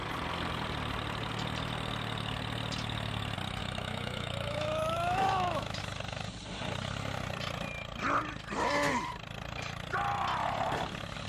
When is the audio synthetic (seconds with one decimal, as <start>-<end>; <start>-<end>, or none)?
3.6-5.8